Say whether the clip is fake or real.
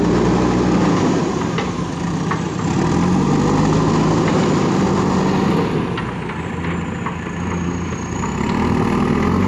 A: real